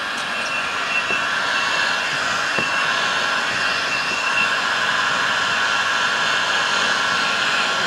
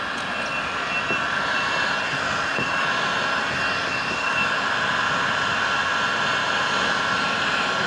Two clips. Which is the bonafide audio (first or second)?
second